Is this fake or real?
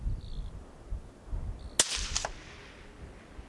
real